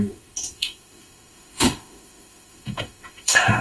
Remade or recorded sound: remade